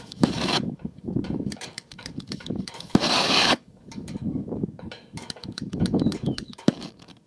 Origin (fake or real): fake